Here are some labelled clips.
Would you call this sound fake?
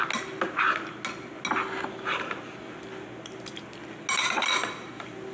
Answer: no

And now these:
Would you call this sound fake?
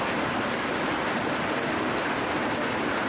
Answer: no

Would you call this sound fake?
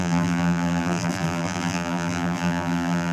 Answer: yes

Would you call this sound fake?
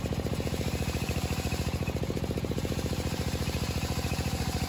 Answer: yes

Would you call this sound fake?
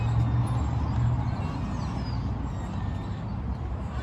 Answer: no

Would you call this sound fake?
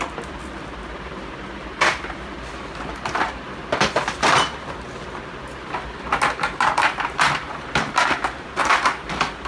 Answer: no